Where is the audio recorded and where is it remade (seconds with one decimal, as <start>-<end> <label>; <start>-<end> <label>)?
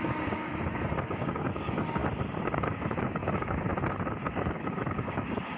0.0-0.5 remade; 0.5-1.0 recorded; 1.0-2.0 remade; 2.0-3.0 recorded; 3.0-3.7 remade; 3.7-4.3 recorded; 4.3-5.6 remade